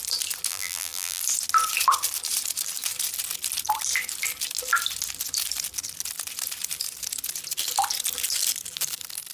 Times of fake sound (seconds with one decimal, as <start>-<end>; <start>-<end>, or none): 0.5-1.2